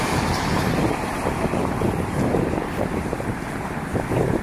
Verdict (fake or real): fake